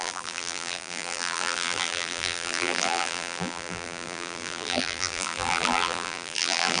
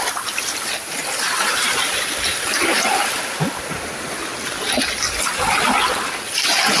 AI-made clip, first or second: first